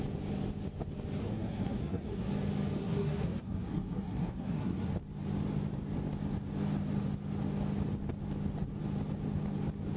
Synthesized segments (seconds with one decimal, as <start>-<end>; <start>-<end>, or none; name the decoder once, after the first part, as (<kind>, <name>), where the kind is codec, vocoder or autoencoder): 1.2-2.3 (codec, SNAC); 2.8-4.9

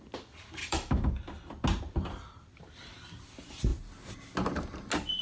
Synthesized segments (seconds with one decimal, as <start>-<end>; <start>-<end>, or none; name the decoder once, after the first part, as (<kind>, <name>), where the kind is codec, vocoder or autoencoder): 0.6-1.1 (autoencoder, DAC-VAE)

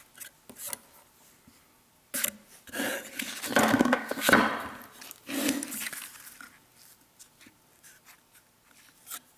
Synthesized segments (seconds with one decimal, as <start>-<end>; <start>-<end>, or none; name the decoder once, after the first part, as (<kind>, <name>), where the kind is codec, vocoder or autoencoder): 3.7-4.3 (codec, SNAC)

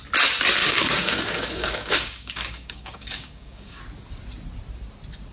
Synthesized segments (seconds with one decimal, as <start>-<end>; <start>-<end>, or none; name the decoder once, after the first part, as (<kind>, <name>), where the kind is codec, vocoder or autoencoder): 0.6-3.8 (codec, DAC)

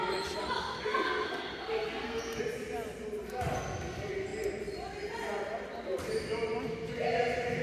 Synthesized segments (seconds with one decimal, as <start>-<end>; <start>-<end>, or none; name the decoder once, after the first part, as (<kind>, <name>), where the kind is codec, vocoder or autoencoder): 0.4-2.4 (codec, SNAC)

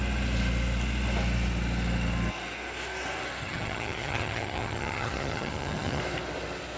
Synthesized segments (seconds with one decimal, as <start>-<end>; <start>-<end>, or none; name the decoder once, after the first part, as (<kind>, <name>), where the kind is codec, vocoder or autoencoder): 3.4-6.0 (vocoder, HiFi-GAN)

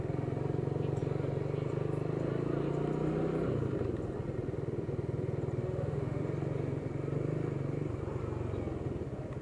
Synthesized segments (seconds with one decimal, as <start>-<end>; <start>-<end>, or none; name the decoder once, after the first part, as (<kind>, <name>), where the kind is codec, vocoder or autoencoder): 5.6-6.2 (autoencoder, DAC-VAE)

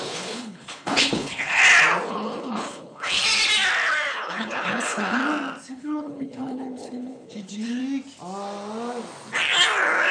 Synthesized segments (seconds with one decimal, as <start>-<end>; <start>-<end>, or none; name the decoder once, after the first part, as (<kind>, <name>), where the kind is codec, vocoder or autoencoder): 0.0-1.6 (codec, HILCodec); 2.1-3.2; 4.1-5.2; 5.7-7.8